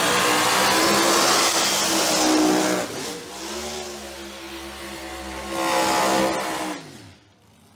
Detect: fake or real real